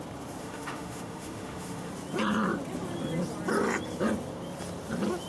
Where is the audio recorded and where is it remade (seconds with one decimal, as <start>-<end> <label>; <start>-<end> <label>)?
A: 0.0-0.4 recorded; 0.4-1.9 remade; 1.9-5.3 recorded